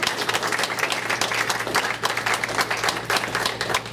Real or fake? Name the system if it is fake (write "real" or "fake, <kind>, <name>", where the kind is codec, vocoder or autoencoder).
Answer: real